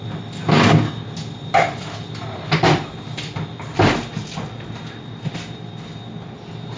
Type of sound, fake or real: real